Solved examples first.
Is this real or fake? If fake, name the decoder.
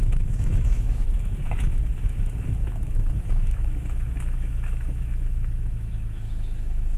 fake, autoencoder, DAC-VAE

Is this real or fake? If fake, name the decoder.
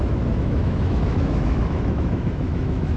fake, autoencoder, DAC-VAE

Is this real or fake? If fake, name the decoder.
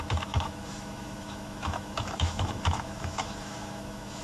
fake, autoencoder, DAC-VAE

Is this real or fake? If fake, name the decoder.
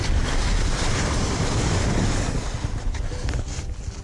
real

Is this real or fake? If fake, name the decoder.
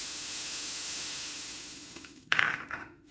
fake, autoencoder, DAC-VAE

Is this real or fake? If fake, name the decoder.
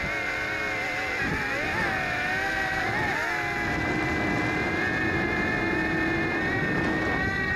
real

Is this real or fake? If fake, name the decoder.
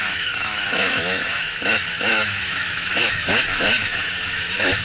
fake, autoencoder, DAC-VAE